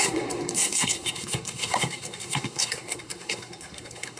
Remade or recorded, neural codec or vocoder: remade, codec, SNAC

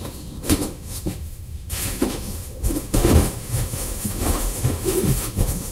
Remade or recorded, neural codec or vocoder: remade, autoencoder, DAC-VAE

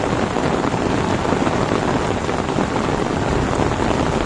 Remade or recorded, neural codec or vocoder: recorded